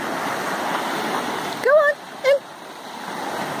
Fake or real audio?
real